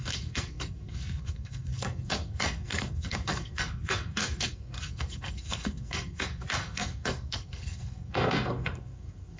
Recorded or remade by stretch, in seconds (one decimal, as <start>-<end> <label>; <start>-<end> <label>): 0.0-9.4 remade